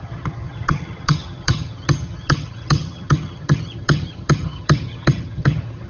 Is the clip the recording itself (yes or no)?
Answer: no